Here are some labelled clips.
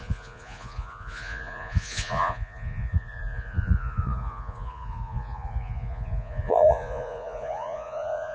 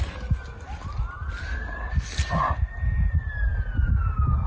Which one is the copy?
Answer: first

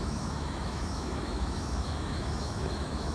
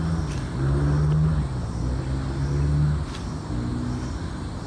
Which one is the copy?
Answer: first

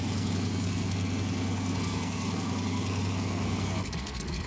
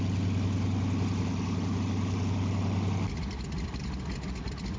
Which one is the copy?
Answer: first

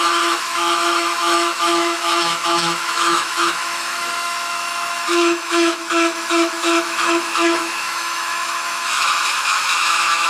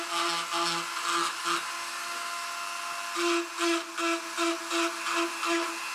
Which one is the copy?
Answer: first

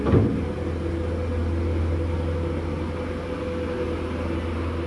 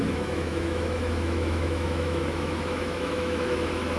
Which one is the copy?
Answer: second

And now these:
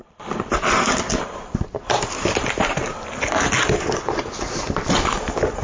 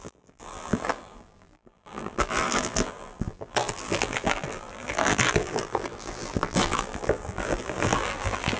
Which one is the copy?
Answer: second